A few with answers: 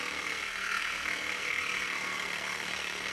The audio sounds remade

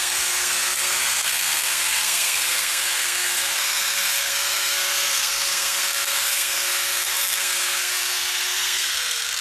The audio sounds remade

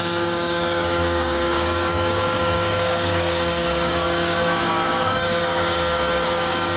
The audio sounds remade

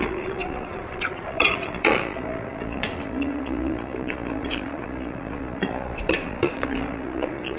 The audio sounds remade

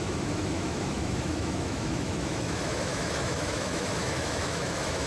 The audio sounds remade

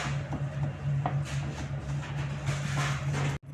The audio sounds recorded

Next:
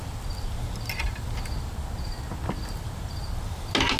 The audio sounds recorded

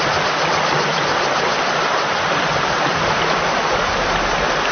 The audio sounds recorded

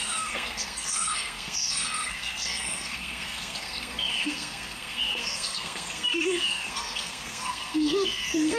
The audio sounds remade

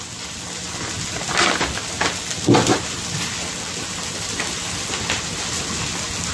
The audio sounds recorded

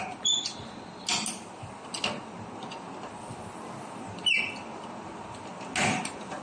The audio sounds recorded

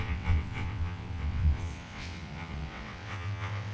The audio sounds remade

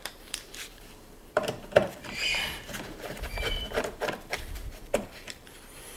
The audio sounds remade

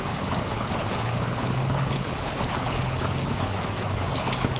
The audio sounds remade